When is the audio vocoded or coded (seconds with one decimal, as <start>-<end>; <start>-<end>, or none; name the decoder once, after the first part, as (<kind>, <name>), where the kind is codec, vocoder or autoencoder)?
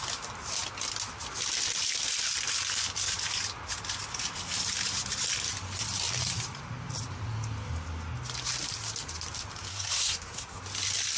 9.7-10.6 (codec, SNAC)